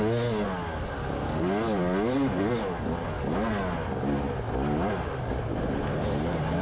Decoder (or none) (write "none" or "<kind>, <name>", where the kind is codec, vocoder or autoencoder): none